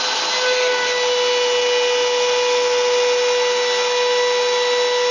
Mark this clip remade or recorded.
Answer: recorded